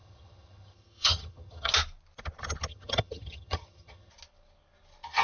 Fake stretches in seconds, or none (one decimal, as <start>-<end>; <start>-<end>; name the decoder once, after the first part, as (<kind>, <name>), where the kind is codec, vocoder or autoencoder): 0.0-1.7 (vocoder, HiFi-GAN); 2.7-4.1